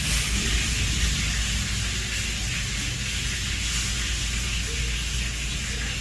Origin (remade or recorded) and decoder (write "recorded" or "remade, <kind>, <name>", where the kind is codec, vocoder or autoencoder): recorded